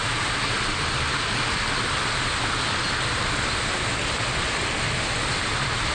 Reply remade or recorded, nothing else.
recorded